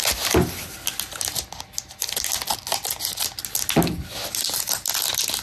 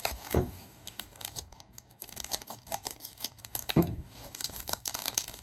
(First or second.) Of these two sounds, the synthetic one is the second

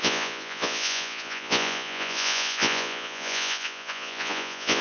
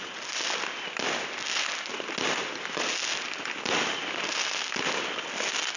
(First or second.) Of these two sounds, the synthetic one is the first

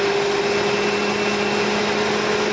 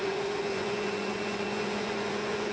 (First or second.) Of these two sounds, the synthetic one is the second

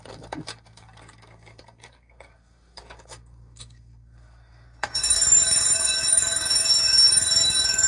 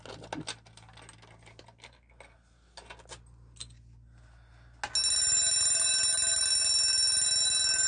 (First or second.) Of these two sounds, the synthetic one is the first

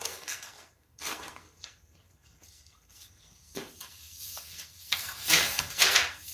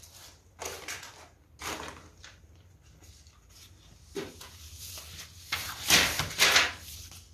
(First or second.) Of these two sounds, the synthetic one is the first